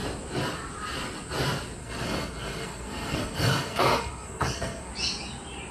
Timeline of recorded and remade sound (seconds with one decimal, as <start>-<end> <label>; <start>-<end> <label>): 0.0-1.8 recorded; 1.8-4.9 remade; 4.9-5.7 recorded